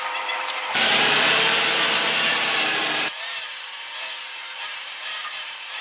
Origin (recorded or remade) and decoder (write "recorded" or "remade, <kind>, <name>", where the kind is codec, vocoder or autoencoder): remade, vocoder, BigVGAN v2